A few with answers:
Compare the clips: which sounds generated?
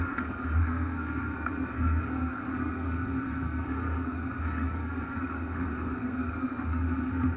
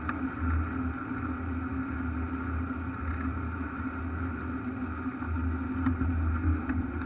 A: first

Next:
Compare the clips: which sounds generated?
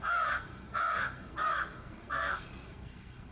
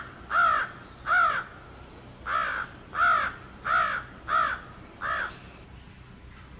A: first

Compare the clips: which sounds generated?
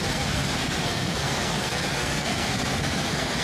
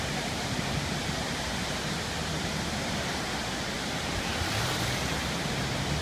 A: first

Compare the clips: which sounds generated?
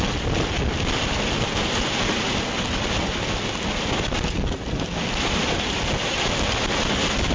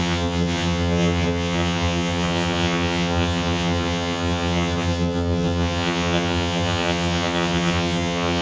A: second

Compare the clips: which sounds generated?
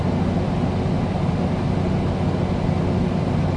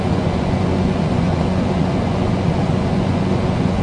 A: second